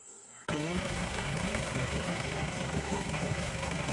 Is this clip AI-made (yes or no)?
yes